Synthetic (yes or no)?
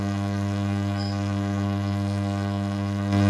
yes